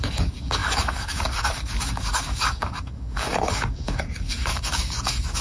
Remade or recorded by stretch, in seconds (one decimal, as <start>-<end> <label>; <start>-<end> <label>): 0.0-5.4 remade